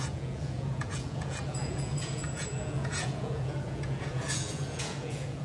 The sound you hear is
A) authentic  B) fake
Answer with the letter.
B